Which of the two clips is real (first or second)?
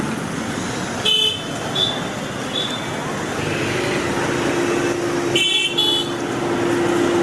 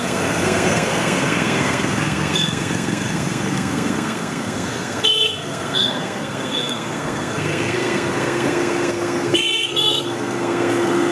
first